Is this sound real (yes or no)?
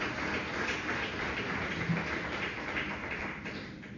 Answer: yes